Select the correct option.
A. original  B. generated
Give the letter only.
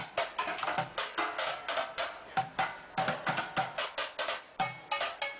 A